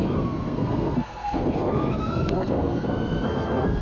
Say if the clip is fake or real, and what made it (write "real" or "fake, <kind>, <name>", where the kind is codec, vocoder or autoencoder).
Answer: fake, codec, SNAC